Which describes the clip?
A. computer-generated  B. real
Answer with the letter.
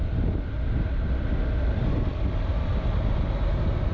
B